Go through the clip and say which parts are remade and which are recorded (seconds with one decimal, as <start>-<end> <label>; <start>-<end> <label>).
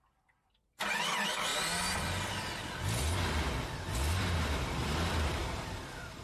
0.0-4.8 recorded; 4.8-5.4 remade; 5.4-6.2 recorded